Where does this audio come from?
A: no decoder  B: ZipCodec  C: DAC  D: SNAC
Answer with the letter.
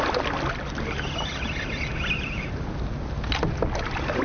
A